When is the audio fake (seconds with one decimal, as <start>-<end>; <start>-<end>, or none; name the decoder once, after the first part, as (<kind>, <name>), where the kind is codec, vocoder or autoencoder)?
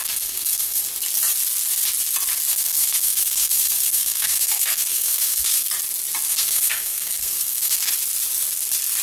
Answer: 0.0-0.8 (codec, SNAC); 2.5-5.7; 6.3-7.9